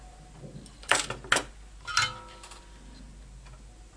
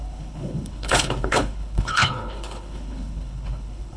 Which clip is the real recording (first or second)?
first